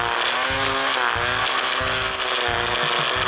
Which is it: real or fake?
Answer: real